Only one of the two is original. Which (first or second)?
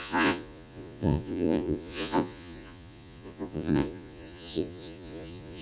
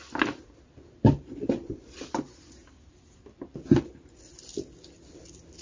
second